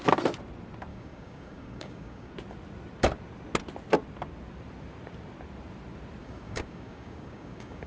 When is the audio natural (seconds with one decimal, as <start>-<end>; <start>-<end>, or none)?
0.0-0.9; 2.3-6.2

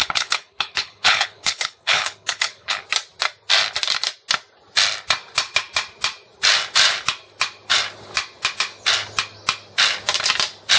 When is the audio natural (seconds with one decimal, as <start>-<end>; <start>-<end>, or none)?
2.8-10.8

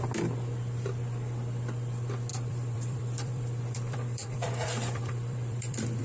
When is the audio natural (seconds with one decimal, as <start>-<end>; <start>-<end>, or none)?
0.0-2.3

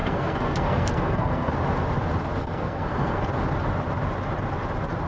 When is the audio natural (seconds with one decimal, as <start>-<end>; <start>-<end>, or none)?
1.5-2.4; 3.2-5.1

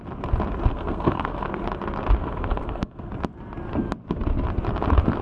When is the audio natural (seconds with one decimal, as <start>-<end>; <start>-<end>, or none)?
0.0-0.7; 1.6-2.2; 3.1-5.2

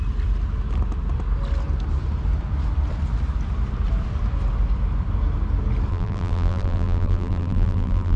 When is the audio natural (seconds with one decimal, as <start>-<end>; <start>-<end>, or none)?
0.0-5.9

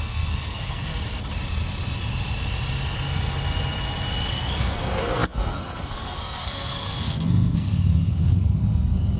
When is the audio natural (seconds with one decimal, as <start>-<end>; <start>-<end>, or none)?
0.9-4.3

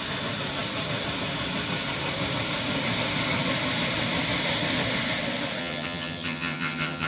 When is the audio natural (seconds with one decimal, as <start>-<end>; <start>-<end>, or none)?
0.0-5.6